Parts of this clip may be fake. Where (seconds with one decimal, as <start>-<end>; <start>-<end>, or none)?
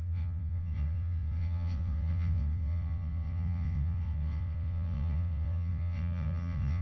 0.0-6.8